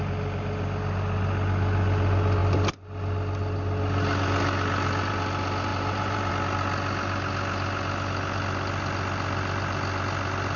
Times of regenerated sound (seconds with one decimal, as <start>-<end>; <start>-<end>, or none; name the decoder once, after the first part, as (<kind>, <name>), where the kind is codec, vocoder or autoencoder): 5.7-6.3 (vocoder, BigVGAN v2)